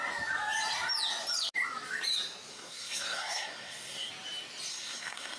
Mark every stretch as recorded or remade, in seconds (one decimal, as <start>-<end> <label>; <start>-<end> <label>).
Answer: 0.0-2.5 recorded; 2.5-4.1 remade; 4.1-4.7 recorded; 4.7-5.4 remade